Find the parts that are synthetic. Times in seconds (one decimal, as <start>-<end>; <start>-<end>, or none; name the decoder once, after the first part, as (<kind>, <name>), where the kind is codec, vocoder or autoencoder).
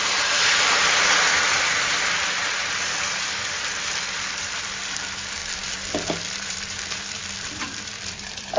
0.0-8.6 (vocoder, BigVGAN v2)